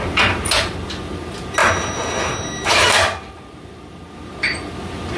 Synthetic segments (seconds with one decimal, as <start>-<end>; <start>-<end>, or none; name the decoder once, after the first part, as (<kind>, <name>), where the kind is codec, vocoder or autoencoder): none